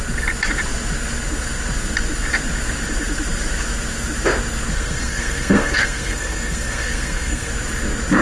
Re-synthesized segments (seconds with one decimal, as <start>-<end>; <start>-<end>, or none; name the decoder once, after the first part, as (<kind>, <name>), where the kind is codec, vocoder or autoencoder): 4.7-7.5 (codec, SNAC)